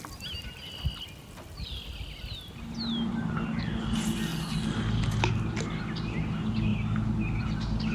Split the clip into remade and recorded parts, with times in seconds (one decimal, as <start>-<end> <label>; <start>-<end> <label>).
0.0-7.9 recorded